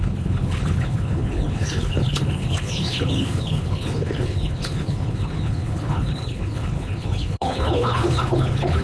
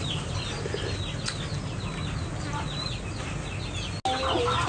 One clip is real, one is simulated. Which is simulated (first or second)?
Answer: first